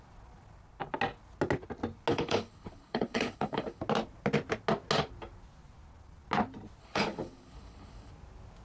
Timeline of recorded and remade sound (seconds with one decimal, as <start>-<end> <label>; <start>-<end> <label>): 0.0-2.1 recorded; 2.1-3.8 remade; 3.8-6.8 recorded; 6.8-8.1 remade; 8.1-8.6 recorded